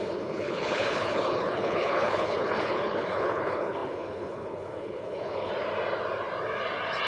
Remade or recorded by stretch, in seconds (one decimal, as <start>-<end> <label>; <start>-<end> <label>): 0.0-5.5 remade; 5.5-7.1 recorded